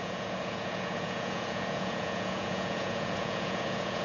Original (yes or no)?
no